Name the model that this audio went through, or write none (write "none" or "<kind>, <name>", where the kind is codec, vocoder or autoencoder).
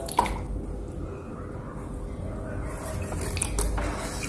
none